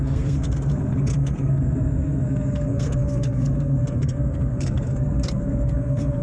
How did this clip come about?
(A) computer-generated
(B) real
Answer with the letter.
A